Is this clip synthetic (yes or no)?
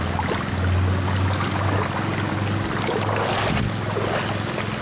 no